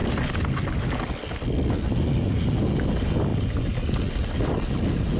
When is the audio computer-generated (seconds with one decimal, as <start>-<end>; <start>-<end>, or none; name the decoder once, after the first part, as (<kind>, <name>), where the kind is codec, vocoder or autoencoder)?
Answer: none